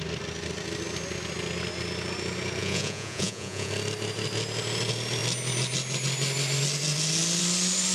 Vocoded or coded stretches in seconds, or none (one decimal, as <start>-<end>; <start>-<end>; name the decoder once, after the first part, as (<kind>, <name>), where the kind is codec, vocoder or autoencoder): 2.6-3.7 (vocoder, Vocos)